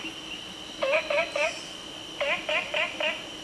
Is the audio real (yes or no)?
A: yes